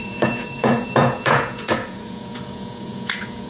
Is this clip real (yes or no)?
no